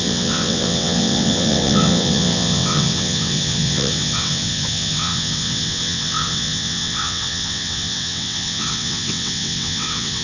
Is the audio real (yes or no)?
no